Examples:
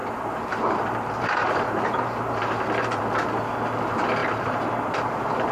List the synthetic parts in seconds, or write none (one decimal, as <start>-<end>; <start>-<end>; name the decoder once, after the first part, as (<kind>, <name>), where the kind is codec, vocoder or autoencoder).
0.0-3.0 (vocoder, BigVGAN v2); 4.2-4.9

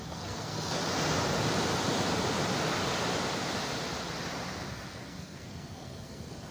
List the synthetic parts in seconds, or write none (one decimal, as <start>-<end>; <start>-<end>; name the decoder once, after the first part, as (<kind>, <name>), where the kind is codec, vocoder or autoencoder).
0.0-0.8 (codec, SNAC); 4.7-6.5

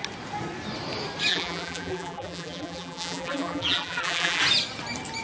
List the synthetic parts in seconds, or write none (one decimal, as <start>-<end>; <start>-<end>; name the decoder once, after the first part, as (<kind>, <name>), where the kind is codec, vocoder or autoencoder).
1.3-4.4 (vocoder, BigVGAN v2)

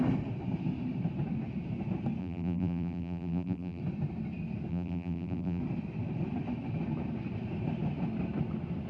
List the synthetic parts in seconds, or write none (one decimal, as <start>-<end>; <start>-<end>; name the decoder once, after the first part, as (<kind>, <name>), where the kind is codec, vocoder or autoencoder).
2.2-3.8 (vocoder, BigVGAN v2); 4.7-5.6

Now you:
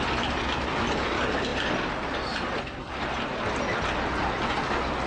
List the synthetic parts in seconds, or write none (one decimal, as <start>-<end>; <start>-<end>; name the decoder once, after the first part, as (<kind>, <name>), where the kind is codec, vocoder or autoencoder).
none